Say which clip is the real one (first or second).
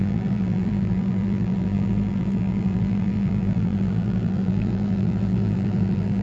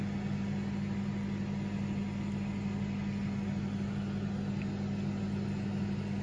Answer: second